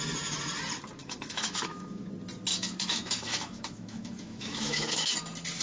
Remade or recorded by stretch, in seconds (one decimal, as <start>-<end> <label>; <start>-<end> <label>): 0.0-1.0 recorded; 1.0-2.1 remade; 2.1-2.5 recorded; 2.5-5.1 remade; 5.1-5.6 recorded